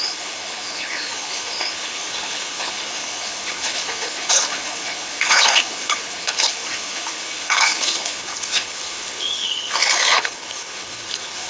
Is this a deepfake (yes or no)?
yes